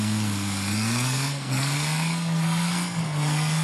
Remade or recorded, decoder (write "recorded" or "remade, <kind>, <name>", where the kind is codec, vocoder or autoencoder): remade, codec, SNAC